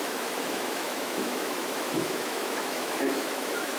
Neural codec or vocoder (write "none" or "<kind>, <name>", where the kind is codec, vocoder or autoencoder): autoencoder, DAC-VAE